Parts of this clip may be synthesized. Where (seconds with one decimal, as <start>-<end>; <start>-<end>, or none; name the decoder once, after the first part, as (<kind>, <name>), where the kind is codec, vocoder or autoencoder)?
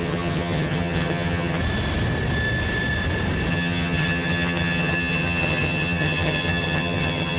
0.0-1.6 (vocoder, HiFi-GAN); 3.5-7.4